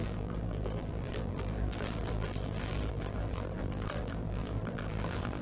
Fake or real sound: fake